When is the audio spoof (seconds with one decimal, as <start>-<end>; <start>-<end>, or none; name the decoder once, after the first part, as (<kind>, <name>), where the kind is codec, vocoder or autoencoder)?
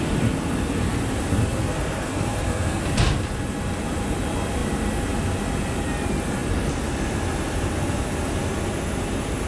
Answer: 1.6-2.8 (codec, SNAC)